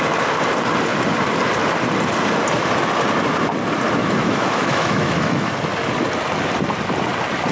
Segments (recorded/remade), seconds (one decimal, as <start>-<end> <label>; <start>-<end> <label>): 0.0-4.0 recorded; 4.0-5.5 remade; 5.5-7.5 recorded